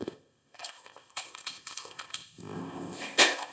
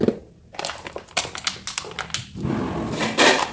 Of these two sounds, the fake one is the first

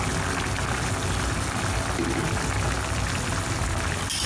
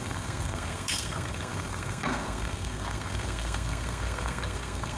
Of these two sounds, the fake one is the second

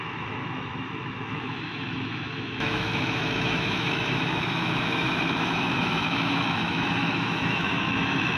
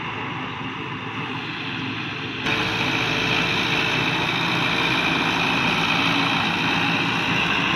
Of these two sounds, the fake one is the first